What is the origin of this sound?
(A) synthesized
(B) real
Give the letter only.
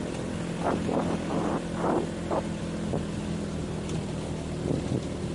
B